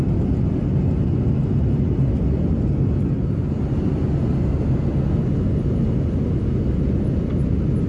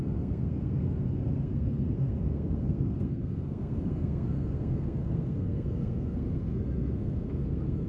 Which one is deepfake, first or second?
second